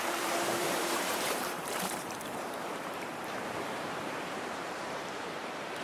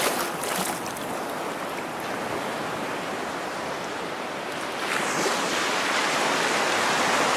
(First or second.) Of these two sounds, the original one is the second